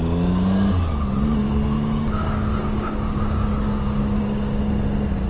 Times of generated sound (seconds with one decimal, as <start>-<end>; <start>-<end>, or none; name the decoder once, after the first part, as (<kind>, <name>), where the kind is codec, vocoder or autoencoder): 1.4-4.6 (codec, DAC)